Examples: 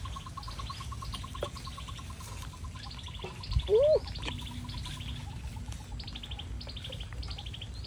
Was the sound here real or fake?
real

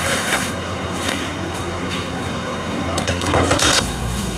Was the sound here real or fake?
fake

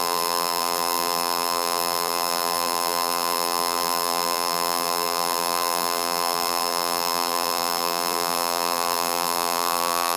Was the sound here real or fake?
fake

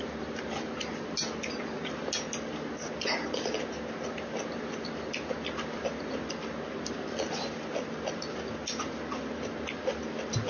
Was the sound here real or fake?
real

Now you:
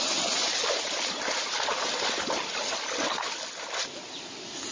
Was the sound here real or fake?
real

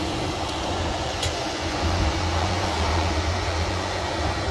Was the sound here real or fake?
fake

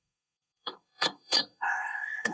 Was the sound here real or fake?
fake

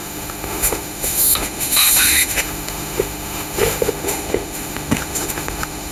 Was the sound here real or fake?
fake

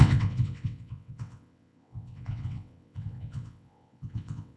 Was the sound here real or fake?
fake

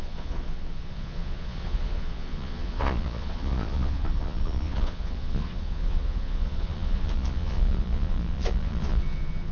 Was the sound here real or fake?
fake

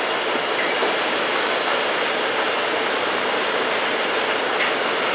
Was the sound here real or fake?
real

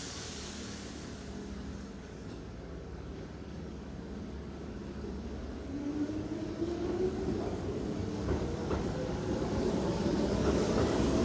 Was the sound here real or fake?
fake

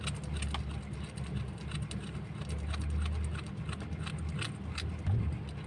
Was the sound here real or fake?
real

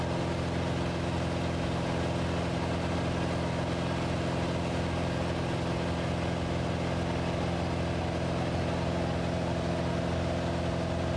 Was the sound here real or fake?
real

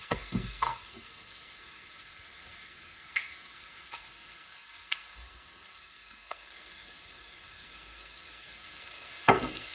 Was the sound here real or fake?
fake